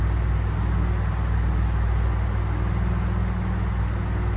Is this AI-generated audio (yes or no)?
no